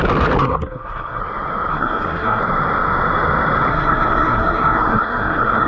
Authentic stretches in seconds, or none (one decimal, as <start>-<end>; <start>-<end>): 0.0-0.4; 1.2-1.7; 2.4-3.7